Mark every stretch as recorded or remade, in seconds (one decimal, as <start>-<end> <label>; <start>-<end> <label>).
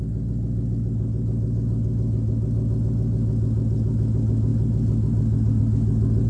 0.0-6.3 recorded